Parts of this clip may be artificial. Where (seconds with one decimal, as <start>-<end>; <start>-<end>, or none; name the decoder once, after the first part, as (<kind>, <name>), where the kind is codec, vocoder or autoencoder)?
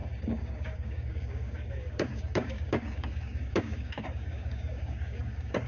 0.0-5.7 (codec, DAC)